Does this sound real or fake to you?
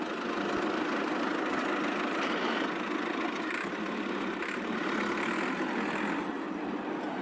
real